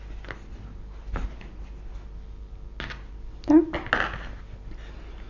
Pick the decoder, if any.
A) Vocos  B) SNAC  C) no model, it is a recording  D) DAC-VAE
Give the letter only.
C